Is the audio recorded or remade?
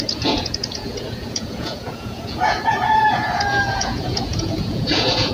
remade